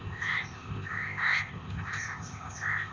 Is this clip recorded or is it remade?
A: remade